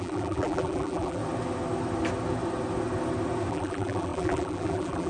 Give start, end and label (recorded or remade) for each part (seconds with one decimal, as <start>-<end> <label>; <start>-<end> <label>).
0.0-1.2 remade; 1.2-3.5 recorded; 3.5-5.1 remade